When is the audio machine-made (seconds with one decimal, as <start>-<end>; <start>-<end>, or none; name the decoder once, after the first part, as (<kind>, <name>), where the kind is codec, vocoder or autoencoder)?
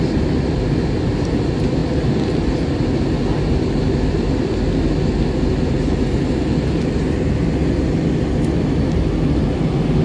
none